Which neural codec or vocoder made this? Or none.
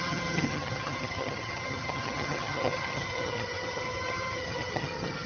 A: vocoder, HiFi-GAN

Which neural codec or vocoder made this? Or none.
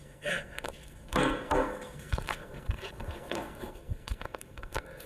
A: codec, SNAC